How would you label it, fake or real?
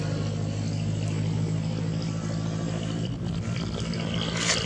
real